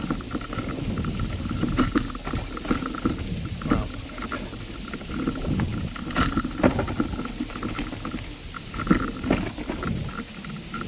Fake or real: real